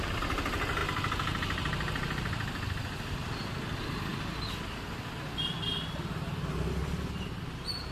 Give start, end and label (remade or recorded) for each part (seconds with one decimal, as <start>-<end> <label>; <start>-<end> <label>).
0.0-7.9 recorded